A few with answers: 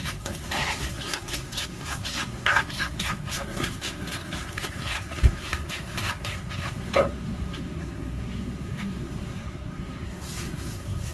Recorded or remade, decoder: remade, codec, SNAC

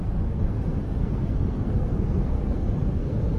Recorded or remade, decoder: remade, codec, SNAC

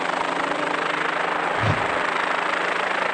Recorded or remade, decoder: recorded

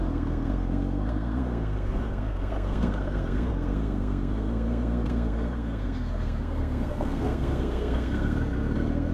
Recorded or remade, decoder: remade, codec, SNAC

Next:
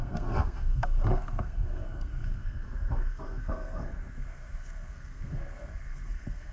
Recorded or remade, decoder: remade, codec, SNAC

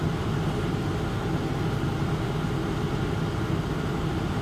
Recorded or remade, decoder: recorded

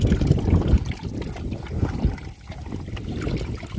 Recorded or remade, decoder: recorded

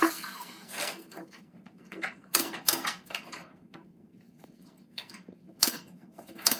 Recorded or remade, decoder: remade, codec, SNAC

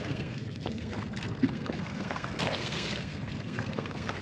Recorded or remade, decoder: remade, codec, SNAC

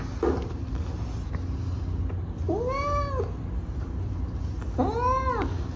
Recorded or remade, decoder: recorded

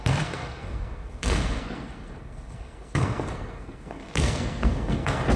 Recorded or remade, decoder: remade, codec, SNAC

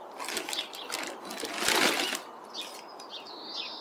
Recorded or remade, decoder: recorded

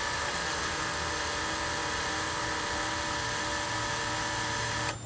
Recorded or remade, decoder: recorded